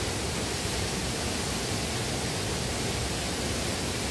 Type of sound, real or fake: real